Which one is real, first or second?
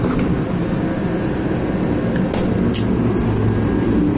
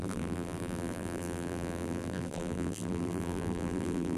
first